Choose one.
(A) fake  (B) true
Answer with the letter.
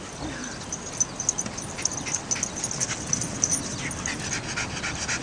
B